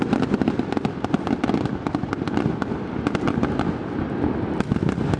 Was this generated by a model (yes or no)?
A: no